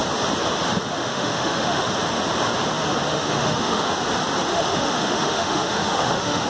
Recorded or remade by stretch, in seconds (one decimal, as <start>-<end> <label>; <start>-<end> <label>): 0.0-1.0 recorded; 1.0-1.9 remade; 1.9-3.1 recorded; 3.1-3.9 remade; 3.9-4.5 recorded; 4.5-6.5 remade